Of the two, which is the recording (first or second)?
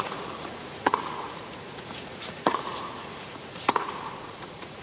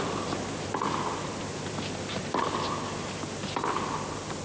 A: second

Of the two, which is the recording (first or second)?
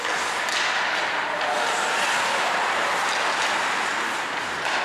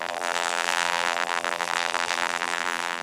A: first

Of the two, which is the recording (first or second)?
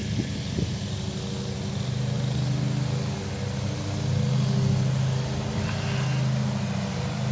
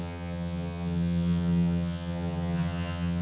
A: first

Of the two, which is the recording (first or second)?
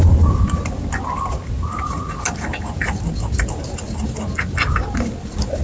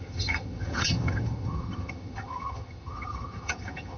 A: first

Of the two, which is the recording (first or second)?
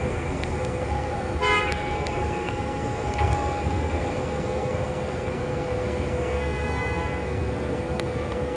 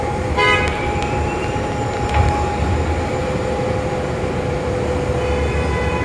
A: second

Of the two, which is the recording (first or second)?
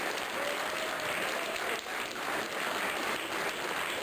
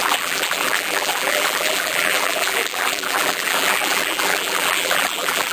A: first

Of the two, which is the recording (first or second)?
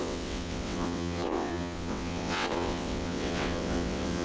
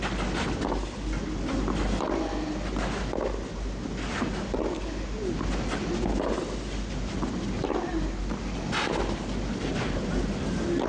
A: second